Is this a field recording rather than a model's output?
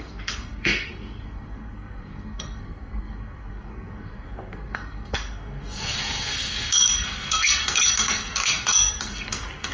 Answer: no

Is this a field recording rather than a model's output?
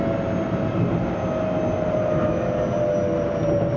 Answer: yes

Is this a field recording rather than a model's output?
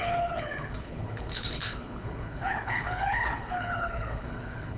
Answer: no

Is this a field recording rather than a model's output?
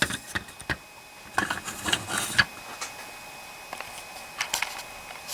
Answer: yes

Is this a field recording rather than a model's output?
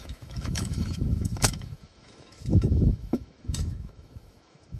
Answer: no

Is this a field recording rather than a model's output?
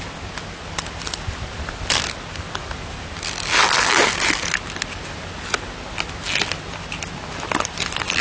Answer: yes